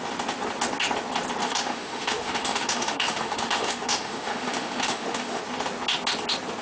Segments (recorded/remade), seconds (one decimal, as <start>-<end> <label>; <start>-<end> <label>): 0.0-1.4 recorded; 1.4-5.4 remade; 5.4-6.6 recorded